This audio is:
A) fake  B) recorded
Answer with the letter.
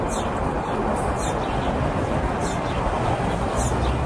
B